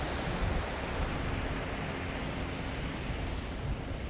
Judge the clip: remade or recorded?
recorded